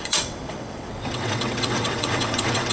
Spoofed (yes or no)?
yes